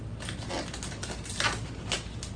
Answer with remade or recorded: recorded